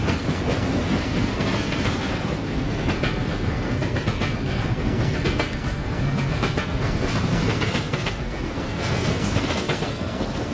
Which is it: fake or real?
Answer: fake